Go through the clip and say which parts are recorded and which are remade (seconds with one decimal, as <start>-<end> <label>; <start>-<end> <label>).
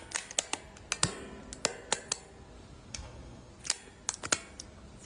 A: 0.0-2.9 recorded; 2.9-3.5 remade; 3.5-5.1 recorded